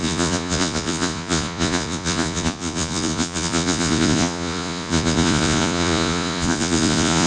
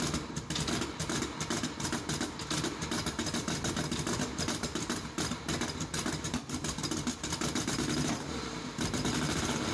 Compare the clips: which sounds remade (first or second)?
first